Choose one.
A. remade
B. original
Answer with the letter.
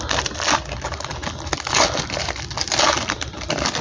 B